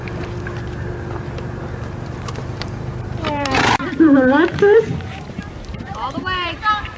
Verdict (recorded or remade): remade